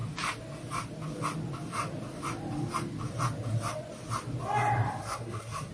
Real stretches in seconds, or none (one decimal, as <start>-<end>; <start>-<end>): 0.0-5.0